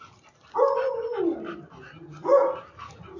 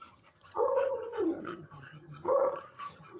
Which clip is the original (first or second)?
first